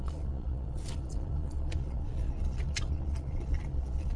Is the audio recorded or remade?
remade